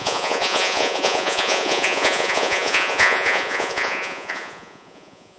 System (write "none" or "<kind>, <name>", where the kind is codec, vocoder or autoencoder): vocoder, Vocos